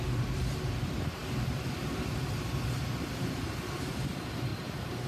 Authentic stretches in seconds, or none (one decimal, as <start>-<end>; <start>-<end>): none